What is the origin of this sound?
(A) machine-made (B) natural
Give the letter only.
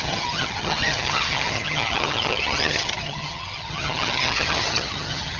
A